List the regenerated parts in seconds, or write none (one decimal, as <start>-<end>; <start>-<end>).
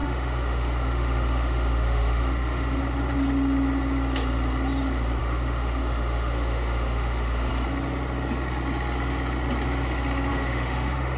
0.0-2.8; 5.2-7.5; 10.3-11.2